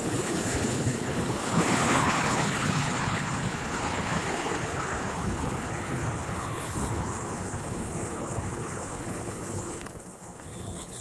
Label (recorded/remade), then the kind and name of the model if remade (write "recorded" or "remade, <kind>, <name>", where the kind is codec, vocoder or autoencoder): remade, codec, HILCodec